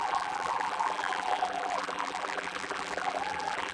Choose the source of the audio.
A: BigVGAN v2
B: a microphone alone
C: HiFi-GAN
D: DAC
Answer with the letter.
A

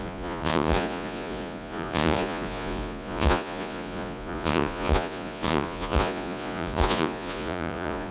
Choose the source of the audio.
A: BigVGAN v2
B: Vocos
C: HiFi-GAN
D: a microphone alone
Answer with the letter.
B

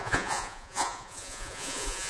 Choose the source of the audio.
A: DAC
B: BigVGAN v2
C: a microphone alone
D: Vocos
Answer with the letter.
D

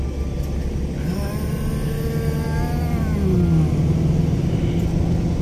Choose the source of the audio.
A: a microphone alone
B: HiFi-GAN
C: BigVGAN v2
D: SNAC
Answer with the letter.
A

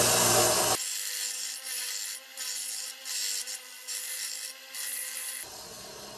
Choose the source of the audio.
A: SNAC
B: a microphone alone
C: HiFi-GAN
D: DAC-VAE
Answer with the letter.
B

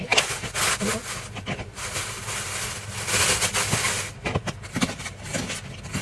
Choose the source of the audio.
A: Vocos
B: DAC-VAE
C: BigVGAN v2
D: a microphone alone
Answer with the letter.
D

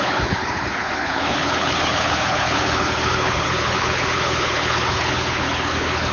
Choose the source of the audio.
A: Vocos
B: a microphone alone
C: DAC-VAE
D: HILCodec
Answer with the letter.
D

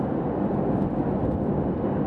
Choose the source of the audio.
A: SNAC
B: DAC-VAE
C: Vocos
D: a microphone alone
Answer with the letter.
D